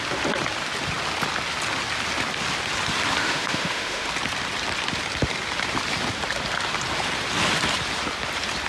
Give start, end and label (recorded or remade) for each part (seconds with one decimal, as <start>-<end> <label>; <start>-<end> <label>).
0.0-3.2 recorded; 3.2-4.1 remade; 4.1-8.7 recorded